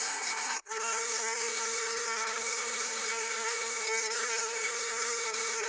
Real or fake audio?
fake